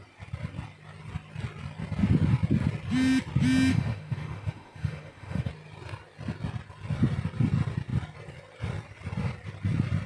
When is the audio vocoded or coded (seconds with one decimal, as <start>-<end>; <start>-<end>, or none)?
3.7-5.5